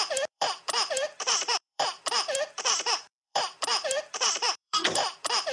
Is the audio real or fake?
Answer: fake